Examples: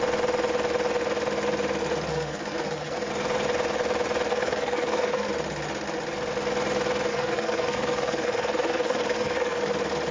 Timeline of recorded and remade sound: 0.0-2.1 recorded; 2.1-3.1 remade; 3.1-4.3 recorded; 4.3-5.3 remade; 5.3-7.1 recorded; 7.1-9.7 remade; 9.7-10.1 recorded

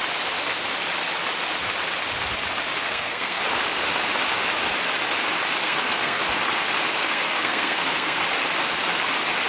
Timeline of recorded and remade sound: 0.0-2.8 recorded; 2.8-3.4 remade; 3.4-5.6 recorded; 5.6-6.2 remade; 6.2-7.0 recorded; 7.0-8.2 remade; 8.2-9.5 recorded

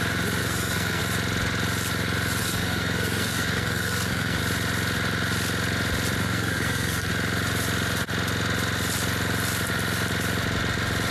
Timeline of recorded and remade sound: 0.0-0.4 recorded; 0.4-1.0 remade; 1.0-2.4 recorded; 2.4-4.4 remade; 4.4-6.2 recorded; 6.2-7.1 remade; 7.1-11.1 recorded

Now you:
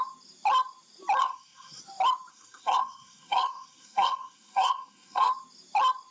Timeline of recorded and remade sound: 0.0-1.2 recorded; 1.2-1.8 remade; 1.8-2.3 recorded; 2.3-5.3 remade; 5.3-6.1 recorded

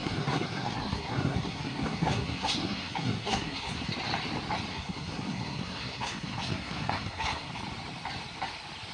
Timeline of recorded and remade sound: 0.0-3.9 remade; 3.9-4.7 recorded; 4.7-7.5 remade; 7.5-8.9 recorded

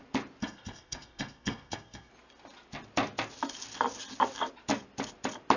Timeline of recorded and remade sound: 0.0-0.4 recorded; 0.4-2.1 remade; 2.1-5.6 recorded